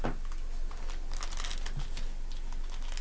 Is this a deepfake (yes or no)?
no